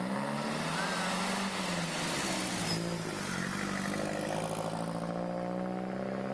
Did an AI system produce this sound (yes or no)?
no